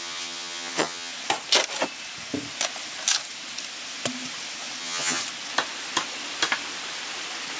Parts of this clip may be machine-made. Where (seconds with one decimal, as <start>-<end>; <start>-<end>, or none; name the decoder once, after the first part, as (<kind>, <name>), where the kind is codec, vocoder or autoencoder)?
0.0-1.1 (vocoder, HiFi-GAN); 4.8-5.2